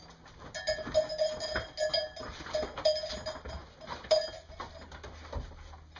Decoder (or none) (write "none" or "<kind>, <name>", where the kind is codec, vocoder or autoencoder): none